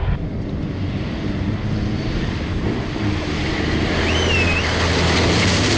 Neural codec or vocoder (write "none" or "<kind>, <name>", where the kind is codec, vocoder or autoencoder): none